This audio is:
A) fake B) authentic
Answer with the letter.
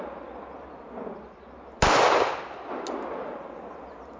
B